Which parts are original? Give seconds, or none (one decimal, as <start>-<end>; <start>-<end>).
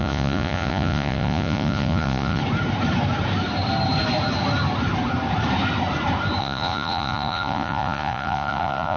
2.4-6.4